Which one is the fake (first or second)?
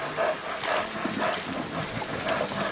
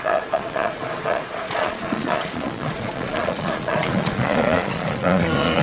second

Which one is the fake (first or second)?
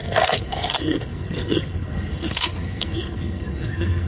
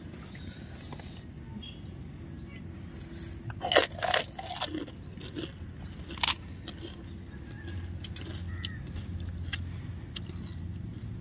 first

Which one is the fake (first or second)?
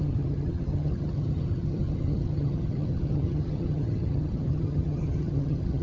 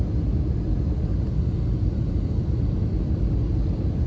first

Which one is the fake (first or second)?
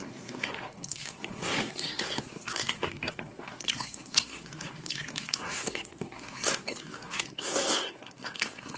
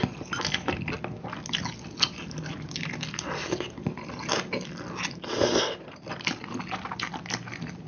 first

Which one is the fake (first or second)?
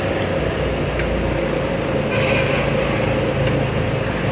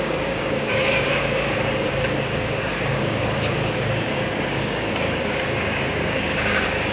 second